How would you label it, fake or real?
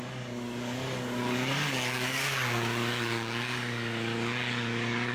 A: fake